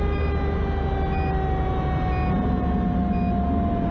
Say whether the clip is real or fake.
real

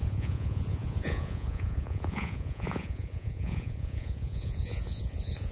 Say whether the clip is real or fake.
fake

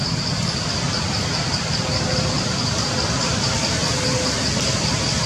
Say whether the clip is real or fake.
real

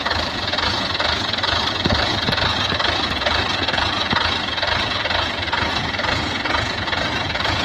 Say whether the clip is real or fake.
fake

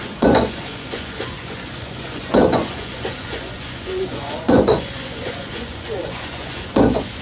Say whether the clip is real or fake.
fake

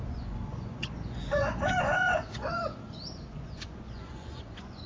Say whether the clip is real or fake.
fake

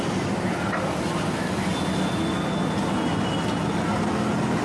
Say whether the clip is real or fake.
real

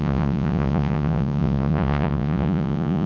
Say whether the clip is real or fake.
fake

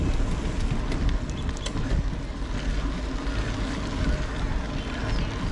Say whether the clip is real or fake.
real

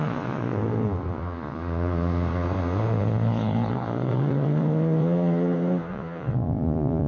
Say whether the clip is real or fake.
fake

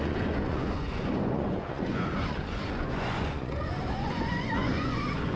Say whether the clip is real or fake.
fake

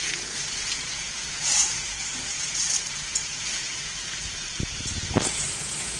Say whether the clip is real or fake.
fake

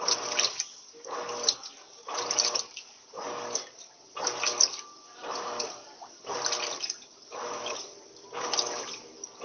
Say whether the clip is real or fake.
real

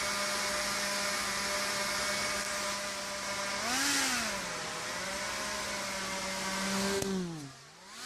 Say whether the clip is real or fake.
real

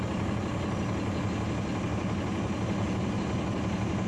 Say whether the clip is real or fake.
real